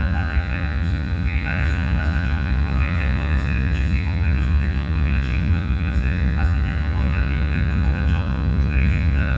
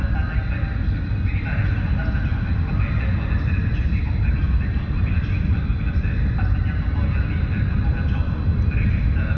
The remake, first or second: first